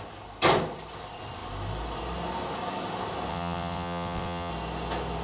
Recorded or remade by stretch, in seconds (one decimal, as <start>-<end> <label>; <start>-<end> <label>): 0.0-3.3 recorded; 3.3-4.5 remade; 4.5-5.2 recorded